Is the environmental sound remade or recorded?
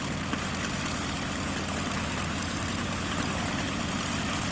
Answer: recorded